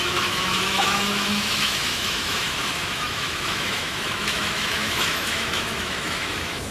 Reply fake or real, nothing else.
fake